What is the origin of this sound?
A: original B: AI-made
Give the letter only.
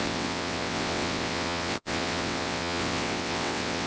B